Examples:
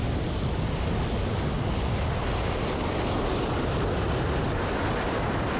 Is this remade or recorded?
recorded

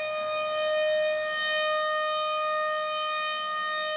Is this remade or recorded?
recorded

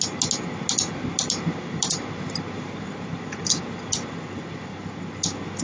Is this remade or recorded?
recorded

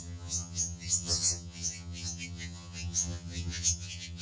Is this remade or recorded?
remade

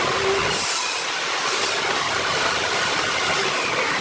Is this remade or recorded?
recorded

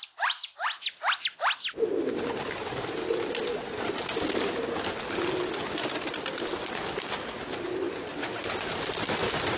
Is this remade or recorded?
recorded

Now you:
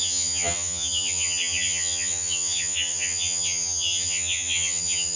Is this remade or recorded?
remade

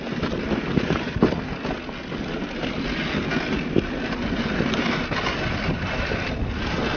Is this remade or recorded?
recorded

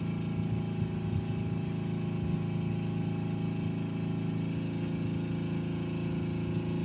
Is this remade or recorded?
recorded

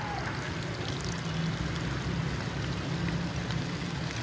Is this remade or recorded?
recorded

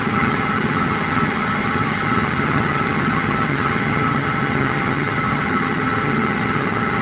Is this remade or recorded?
remade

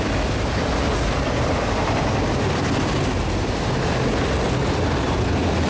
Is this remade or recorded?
recorded